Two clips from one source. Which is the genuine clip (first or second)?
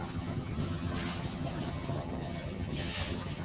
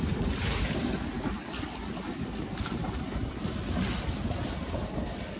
second